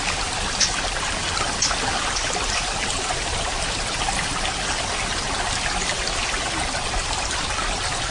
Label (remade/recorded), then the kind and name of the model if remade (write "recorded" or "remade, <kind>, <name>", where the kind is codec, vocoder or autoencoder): recorded